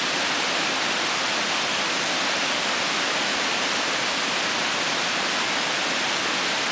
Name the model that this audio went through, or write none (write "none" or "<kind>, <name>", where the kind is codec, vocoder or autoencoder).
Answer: none